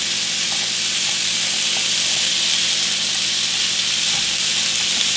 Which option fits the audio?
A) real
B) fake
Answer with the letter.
A